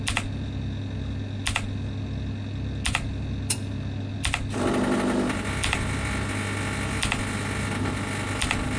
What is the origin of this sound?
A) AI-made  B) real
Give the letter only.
B